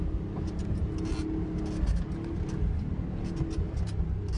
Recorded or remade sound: recorded